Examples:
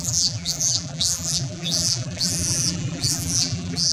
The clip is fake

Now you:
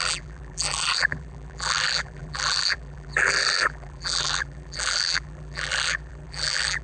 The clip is fake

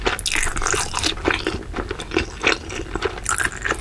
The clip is real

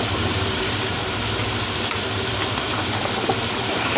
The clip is real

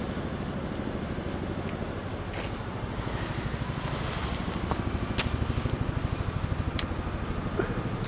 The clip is real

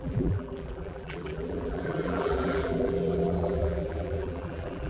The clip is fake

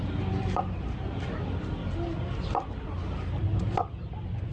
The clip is real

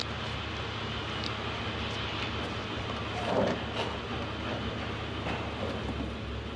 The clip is real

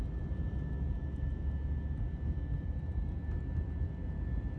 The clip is fake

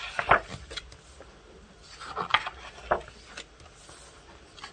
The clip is real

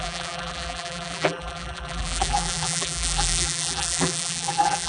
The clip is fake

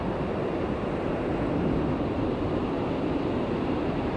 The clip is fake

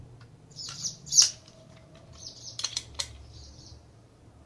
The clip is fake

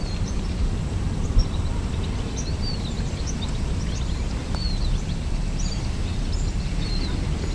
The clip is real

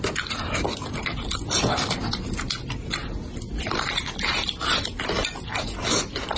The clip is real